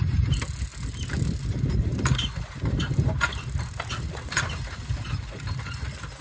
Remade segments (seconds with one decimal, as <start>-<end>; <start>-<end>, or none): none